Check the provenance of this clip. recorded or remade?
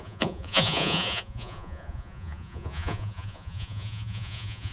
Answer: remade